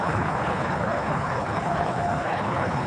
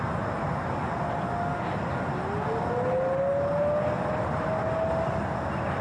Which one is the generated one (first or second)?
first